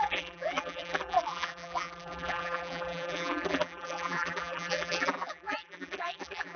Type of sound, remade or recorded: remade